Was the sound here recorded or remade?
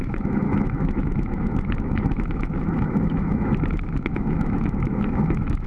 remade